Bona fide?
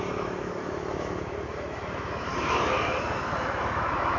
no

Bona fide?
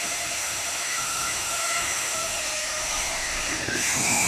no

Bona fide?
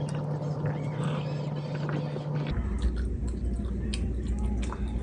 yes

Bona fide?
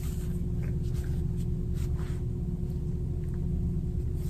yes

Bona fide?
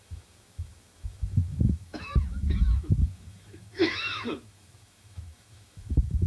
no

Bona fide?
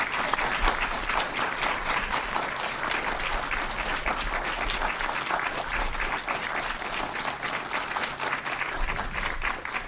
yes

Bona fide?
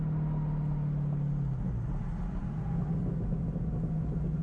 yes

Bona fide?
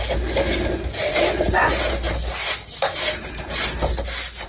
yes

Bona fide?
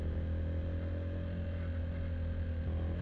yes